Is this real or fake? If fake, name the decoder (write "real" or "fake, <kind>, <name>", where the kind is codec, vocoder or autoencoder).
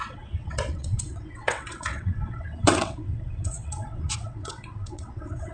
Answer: fake, vocoder, WaveNeXt